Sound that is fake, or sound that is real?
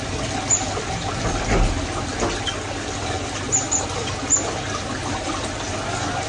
real